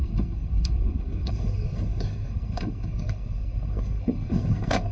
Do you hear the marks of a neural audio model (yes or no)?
yes